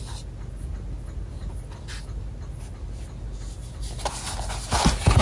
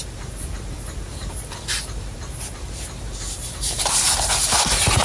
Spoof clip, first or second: second